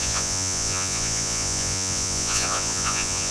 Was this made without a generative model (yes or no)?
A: no